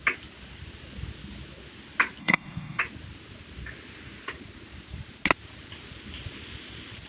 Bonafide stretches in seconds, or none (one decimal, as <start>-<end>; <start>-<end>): 0.0-2.2; 2.8-7.1